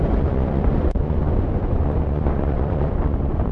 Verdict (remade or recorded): remade